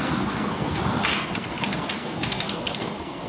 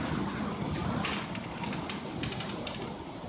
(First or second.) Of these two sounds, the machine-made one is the first